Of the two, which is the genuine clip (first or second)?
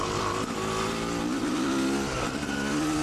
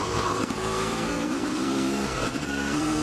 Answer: first